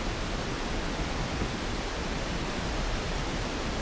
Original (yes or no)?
yes